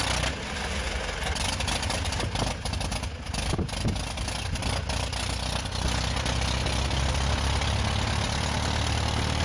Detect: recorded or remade recorded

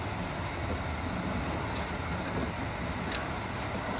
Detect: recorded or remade recorded